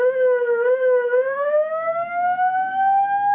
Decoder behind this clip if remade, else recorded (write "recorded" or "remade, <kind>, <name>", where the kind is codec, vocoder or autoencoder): remade, autoencoder, DAC-VAE